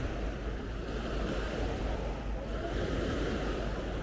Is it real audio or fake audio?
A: real